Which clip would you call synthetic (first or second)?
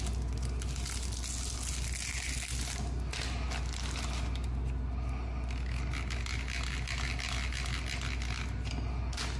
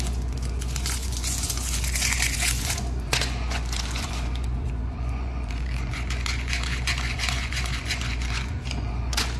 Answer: second